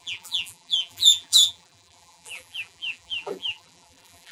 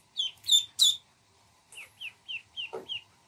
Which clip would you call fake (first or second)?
first